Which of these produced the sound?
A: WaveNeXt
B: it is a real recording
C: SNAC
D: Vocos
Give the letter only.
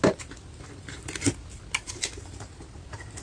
B